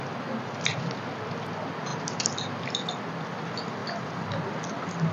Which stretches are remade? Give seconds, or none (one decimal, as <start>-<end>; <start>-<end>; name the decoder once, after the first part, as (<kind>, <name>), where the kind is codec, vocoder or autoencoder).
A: none